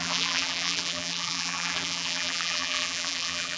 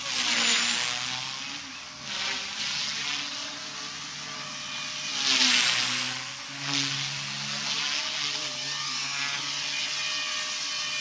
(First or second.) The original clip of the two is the second